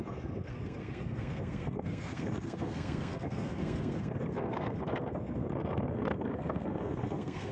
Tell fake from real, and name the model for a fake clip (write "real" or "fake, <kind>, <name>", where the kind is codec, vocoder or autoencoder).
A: fake, codec, SNAC